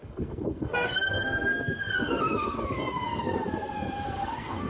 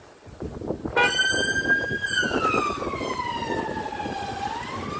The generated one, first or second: first